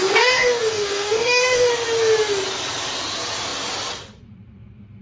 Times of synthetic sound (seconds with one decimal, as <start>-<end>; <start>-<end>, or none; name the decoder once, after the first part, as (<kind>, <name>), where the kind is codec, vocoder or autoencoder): 0.0-1.7 (codec, DAC)